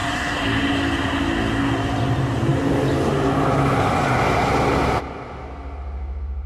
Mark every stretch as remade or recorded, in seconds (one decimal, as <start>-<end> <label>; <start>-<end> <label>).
0.0-6.5 recorded